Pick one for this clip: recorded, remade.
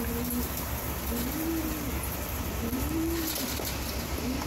recorded